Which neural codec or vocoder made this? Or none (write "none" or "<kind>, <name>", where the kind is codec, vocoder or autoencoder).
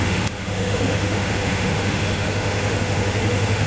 autoencoder, DAC-VAE